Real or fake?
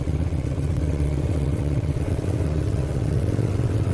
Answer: fake